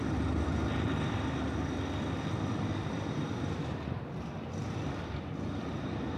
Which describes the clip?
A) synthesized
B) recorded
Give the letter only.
A